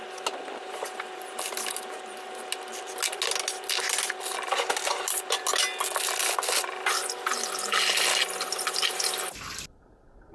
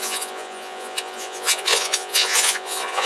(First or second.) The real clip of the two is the first